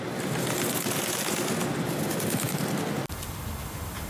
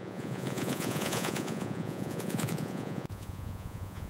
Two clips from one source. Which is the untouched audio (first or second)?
first